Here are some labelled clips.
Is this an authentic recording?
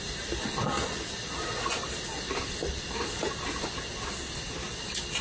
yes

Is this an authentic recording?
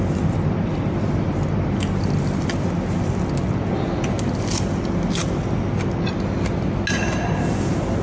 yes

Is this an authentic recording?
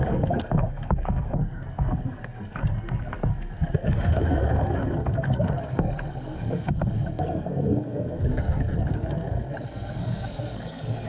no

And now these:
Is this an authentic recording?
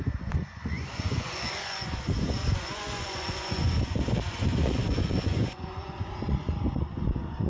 no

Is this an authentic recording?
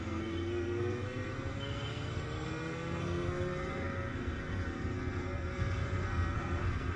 no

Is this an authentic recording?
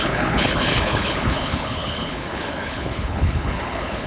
no